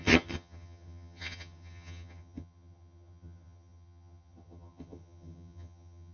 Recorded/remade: remade